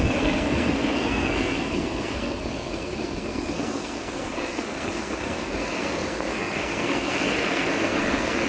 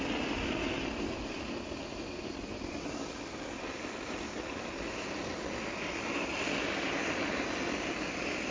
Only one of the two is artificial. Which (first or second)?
first